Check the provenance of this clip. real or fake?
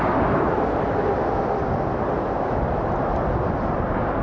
real